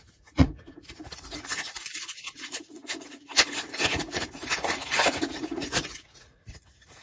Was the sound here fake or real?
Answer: fake